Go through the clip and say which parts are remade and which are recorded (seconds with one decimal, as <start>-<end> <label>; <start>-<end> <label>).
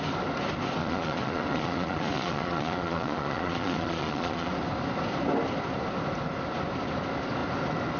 0.0-0.8 recorded; 0.8-4.5 remade; 4.5-8.0 recorded